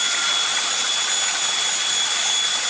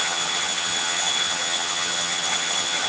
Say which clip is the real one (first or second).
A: first